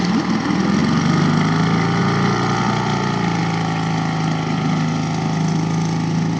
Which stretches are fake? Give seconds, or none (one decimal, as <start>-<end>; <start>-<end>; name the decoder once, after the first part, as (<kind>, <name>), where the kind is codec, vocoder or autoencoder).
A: none